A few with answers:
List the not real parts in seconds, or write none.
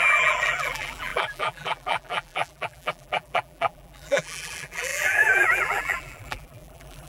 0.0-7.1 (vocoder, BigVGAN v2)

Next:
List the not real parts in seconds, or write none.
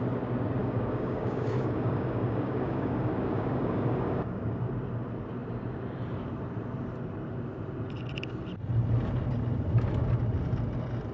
0.6-4.7 (codec, DAC)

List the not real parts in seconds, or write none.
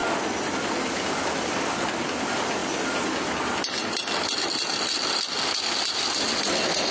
none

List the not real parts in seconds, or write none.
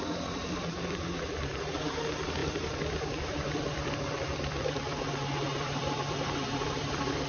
0.4-1.5 (vocoder, BigVGAN v2); 2.4-5.1; 5.5-7.3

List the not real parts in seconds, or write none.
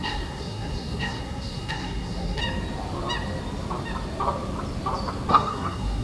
0.0-2.4 (codec, SNAC); 5.3-6.0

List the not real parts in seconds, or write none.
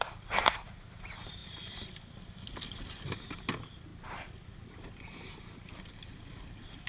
none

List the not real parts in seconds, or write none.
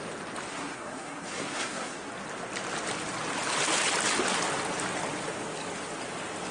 0.5-2.1 (codec, SNAC)